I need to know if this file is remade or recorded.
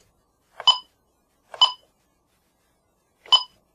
recorded